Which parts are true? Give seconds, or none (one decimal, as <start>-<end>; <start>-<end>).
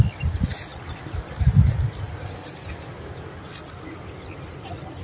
0.0-5.0